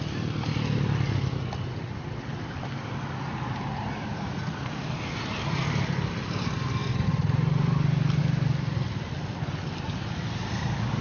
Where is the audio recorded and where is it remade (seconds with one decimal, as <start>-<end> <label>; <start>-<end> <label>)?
0.0-11.0 recorded